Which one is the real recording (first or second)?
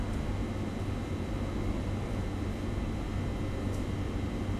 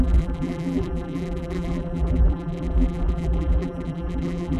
first